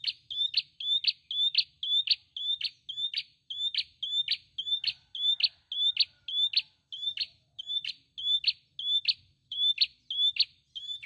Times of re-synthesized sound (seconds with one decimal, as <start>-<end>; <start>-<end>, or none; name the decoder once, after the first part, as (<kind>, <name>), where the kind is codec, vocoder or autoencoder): 9.4-10.0 (vocoder, BigVGAN v2)